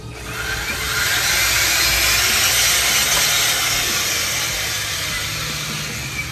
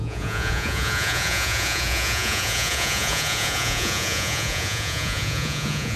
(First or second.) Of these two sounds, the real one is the first